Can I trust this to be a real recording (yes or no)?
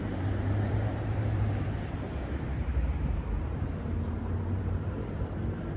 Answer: no